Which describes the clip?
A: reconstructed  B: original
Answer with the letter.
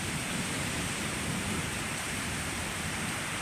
A